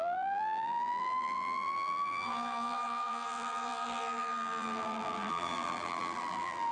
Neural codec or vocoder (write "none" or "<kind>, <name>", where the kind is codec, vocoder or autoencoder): vocoder, BigVGAN v2